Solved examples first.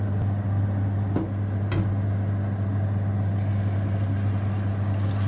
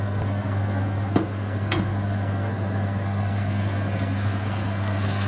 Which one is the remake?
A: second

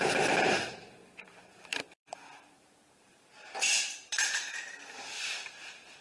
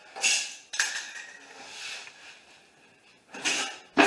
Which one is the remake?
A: first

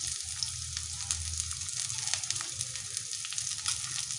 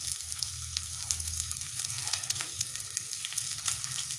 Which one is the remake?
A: second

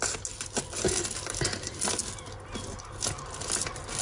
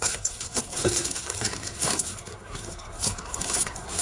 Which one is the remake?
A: second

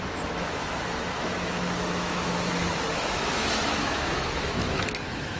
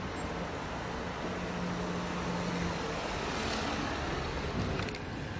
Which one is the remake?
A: first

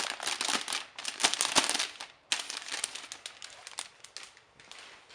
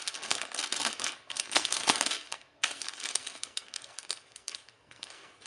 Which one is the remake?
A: second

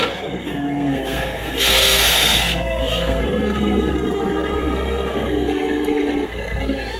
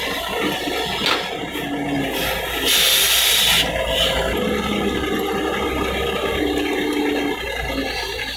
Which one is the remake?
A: first